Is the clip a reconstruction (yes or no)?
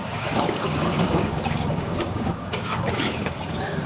yes